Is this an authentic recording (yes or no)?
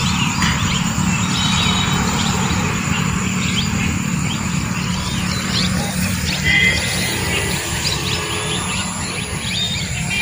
yes